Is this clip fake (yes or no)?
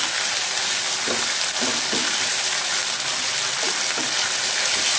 no